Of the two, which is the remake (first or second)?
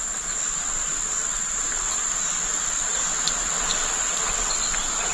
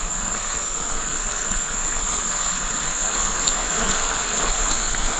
second